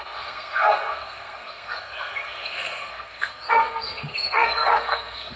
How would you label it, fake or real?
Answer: fake